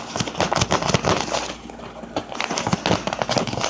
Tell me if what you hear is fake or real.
real